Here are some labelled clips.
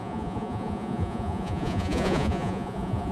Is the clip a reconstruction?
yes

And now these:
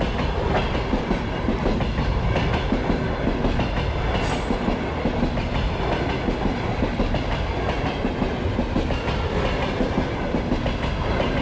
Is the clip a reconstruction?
no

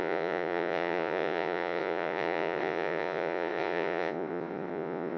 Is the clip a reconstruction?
yes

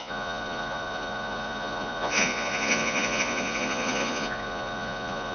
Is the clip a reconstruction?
yes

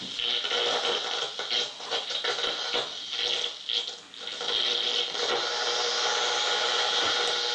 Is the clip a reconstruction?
no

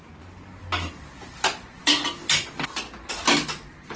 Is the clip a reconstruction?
no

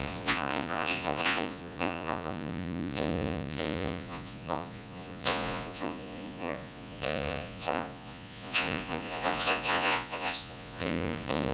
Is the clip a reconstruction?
yes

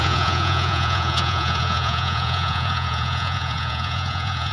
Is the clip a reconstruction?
yes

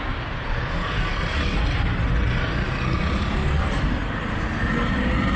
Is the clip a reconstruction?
no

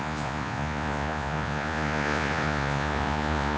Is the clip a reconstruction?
yes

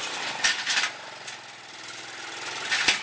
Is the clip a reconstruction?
no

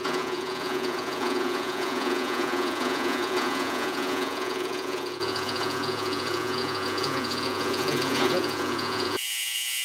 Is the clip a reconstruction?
yes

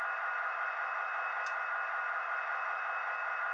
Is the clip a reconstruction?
no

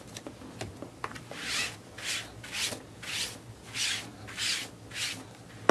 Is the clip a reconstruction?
no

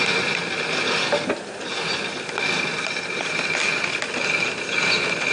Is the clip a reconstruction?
no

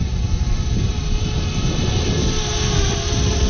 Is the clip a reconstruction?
no